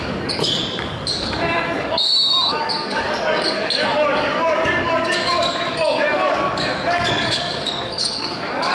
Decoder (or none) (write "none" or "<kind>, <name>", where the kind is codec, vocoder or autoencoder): codec, DAC